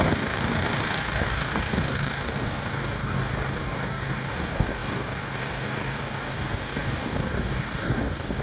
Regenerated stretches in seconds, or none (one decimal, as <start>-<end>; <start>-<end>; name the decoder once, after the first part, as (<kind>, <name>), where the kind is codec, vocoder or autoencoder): 0.0-8.4 (codec, DAC)